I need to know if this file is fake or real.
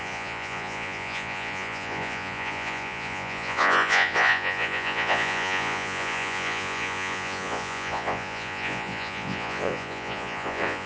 fake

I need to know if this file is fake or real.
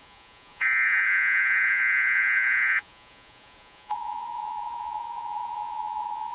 fake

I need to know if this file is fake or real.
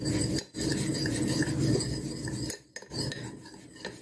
real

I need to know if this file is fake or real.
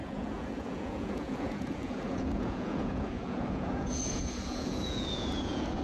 fake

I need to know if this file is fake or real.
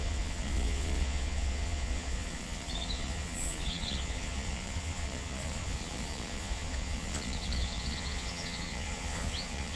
fake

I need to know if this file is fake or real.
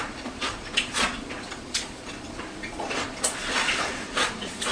fake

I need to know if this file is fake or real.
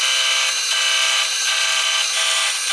real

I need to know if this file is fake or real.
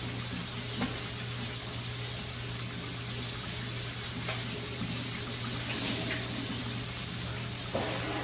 real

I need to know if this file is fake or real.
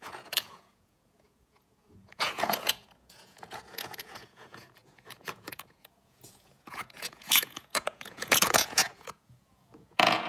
fake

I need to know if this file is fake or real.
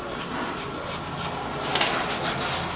real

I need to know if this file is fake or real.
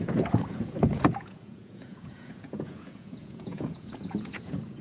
fake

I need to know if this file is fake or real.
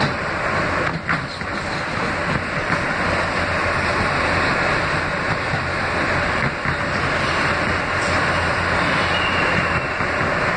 real